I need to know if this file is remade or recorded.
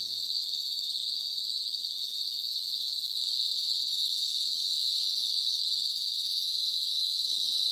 remade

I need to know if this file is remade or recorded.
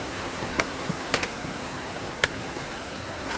remade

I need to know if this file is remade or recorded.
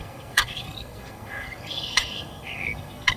remade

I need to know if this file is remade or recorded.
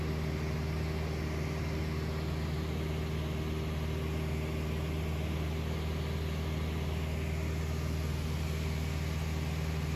recorded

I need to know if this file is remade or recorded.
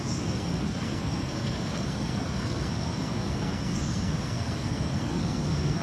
remade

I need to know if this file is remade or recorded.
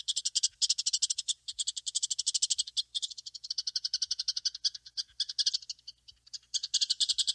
recorded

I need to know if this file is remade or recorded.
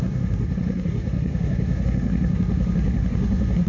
remade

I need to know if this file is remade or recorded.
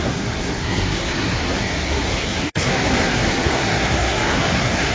remade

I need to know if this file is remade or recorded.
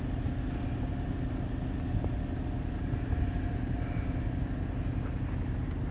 recorded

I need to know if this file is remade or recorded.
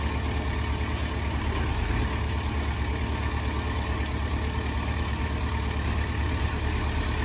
recorded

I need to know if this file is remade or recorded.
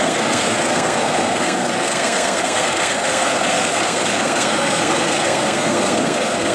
remade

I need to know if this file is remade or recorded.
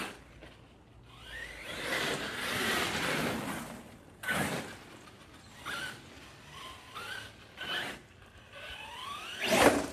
recorded